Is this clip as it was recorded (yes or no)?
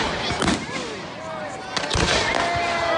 yes